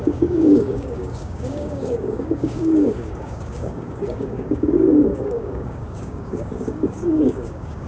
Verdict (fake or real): fake